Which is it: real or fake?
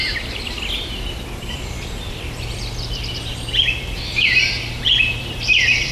fake